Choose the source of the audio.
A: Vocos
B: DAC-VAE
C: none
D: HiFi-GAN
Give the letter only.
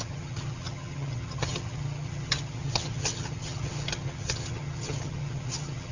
D